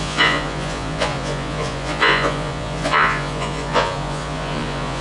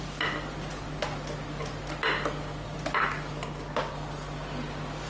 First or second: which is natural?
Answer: second